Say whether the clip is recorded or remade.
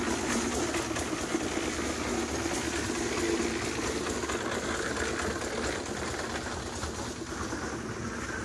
recorded